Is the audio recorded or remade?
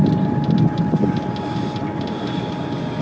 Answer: recorded